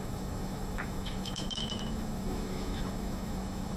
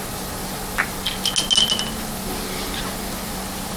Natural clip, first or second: second